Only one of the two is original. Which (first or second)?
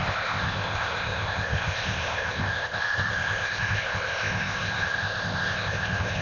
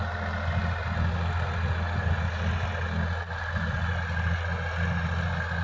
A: second